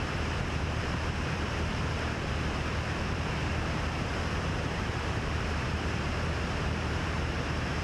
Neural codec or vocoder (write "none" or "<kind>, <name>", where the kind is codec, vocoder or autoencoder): vocoder, BigVGAN v2